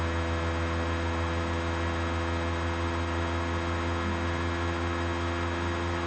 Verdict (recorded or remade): recorded